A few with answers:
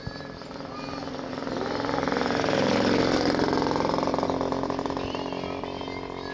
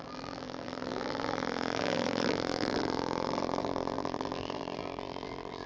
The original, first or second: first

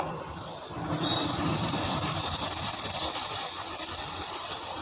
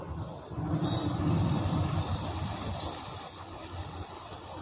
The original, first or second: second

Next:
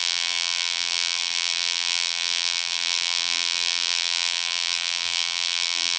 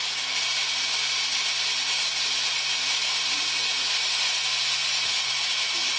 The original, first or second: second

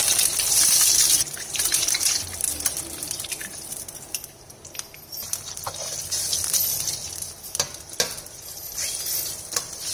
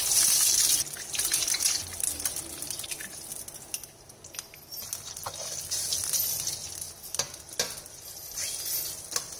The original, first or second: second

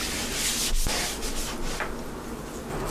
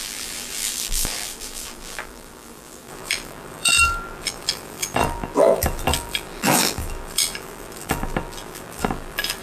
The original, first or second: first